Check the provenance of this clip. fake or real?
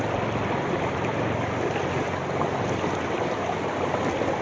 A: real